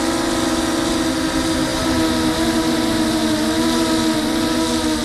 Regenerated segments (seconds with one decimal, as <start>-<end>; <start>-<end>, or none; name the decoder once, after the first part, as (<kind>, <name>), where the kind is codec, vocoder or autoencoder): none